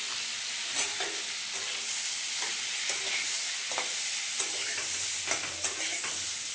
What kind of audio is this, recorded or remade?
recorded